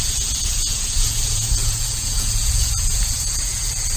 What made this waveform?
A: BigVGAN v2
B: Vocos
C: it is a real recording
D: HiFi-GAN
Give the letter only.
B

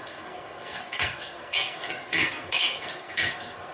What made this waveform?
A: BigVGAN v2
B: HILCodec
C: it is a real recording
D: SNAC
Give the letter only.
D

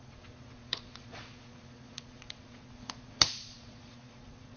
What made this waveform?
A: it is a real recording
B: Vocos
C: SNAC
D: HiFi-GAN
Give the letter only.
B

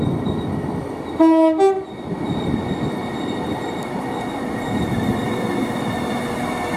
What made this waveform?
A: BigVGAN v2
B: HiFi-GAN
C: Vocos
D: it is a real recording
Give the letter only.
D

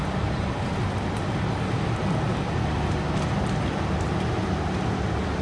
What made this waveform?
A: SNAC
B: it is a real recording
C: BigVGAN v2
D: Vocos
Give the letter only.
B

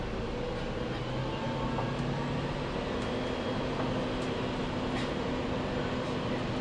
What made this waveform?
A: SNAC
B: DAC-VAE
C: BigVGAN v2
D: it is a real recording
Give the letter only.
D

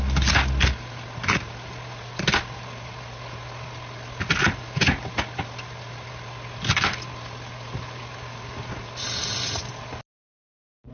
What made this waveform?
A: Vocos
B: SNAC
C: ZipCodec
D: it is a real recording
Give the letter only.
D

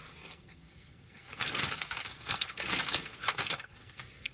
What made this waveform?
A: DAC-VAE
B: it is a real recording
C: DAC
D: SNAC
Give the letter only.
D